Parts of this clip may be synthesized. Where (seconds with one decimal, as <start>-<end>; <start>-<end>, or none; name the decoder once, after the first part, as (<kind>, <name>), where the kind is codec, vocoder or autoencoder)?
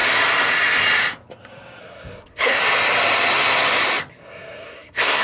1.8-2.6 (codec, SNAC); 4.1-5.2